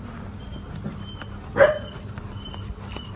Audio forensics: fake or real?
real